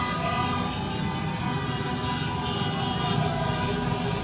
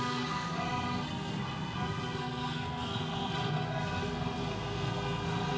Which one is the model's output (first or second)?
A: second